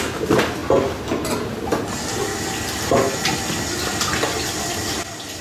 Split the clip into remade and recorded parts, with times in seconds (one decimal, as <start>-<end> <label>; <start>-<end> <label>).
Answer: 0.0-5.4 recorded